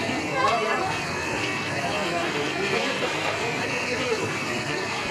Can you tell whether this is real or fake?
fake